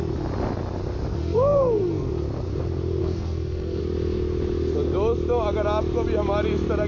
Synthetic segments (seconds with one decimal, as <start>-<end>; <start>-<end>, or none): 1.1-2.1; 3.0-3.8

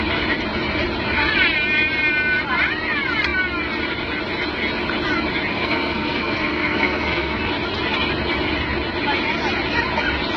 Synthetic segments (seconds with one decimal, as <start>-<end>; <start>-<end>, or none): 5.5-7.5